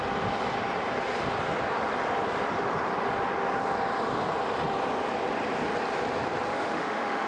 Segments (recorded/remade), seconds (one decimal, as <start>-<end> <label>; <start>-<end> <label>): 0.0-6.5 recorded; 6.5-7.3 remade